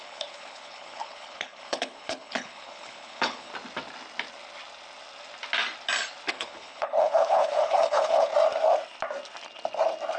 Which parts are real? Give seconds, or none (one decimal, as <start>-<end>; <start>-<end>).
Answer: 3.5-6.3; 8.3-10.2